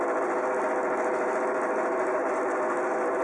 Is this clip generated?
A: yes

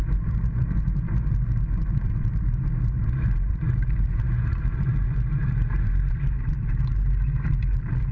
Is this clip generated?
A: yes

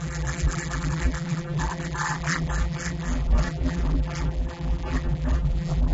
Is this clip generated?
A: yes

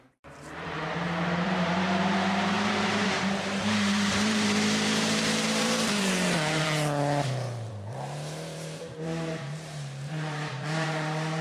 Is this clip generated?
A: yes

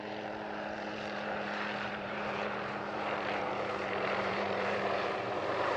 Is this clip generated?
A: yes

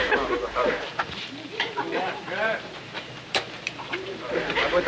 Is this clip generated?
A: yes